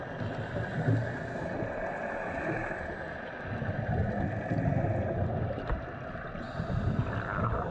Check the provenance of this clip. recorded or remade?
recorded